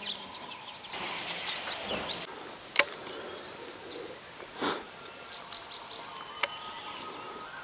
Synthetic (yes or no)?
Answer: no